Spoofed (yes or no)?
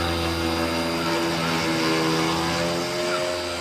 no